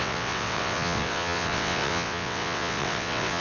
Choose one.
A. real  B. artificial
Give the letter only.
B